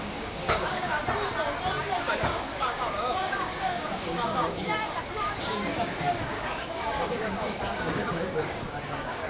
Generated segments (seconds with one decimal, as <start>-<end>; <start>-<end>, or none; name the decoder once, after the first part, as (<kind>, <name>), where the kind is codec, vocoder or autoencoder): 0.0-1.0 (codec, DAC); 1.8-9.3